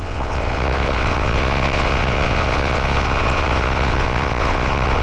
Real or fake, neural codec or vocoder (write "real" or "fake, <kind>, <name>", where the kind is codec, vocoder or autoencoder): fake, vocoder, WaveNeXt